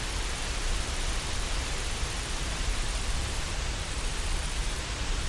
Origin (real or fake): fake